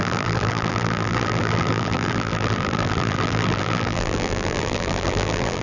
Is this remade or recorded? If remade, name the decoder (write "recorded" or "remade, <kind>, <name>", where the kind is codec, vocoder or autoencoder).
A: remade, vocoder, BigVGAN v2